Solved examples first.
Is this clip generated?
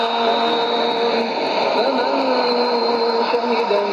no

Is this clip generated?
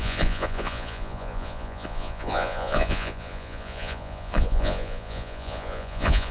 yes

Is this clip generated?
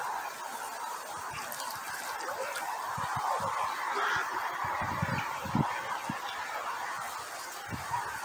no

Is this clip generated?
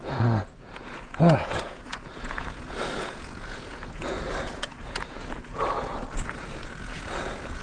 yes